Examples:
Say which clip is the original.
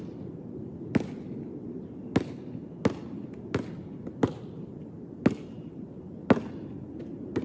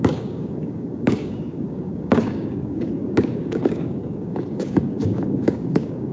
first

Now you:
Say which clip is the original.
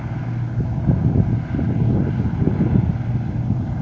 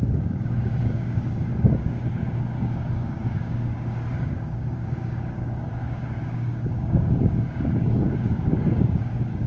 first